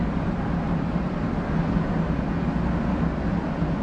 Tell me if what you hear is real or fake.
real